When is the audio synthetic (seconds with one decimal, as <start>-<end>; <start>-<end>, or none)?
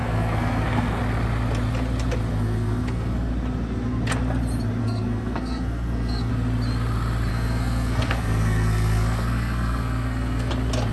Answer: 0.0-1.0; 2.3-3.3; 4.8-6.3; 7.3-10.5